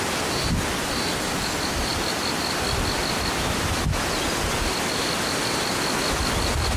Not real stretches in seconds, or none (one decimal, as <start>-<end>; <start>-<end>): none